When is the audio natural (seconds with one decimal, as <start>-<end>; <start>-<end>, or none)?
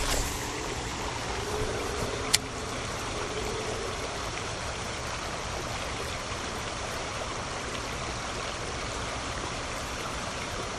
0.9-1.5; 5.0-5.7; 7.3-8.9